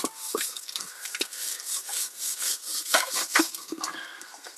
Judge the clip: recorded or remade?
remade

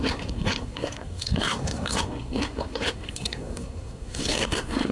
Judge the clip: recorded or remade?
remade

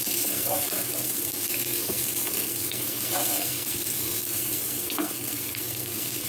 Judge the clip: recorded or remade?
remade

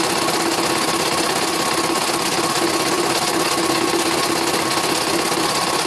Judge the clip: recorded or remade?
recorded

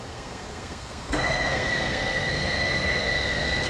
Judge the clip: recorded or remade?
remade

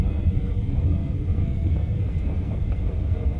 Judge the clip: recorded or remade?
remade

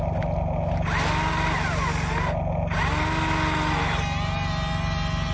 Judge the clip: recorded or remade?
recorded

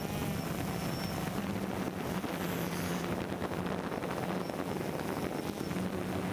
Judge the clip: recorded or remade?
recorded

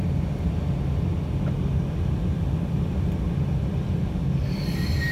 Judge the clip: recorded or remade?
recorded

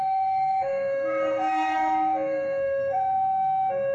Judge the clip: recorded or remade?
remade